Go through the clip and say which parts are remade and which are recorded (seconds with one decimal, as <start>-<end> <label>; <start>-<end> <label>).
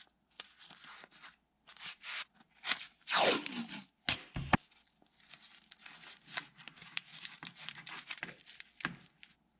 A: 0.0-9.6 recorded